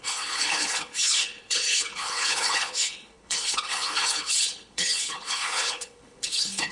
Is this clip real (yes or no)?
no